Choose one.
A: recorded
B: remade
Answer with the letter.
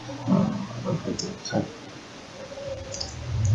B